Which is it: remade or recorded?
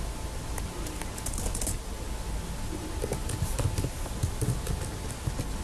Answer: recorded